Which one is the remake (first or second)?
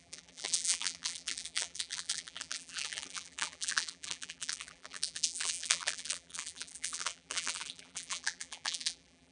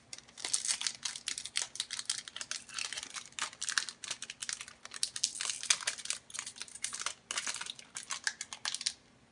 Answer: first